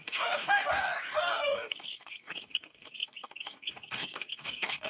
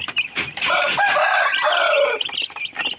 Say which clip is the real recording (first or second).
second